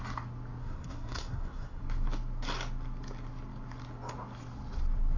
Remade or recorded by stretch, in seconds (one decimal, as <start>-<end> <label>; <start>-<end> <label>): 0.0-0.6 recorded; 0.6-1.8 remade; 1.8-5.2 recorded